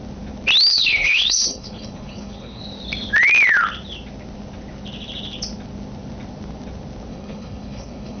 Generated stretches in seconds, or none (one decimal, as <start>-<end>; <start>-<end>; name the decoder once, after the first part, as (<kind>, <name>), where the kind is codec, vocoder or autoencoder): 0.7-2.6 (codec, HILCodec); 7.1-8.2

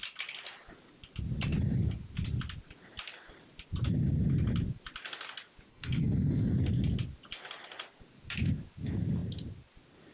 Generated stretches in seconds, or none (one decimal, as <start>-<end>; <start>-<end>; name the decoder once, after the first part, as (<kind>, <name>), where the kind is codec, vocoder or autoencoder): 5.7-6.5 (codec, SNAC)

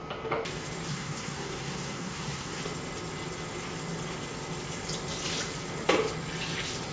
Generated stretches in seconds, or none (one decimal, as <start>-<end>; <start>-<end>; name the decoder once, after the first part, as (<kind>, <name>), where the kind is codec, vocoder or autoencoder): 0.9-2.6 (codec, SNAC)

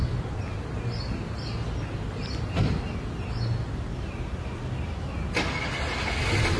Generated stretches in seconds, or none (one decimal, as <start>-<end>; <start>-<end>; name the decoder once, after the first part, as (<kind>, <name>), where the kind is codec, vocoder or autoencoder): none